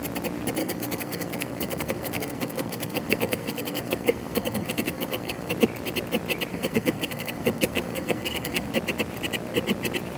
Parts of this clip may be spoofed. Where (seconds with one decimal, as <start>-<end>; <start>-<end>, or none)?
0.6-5.5; 6.5-8.7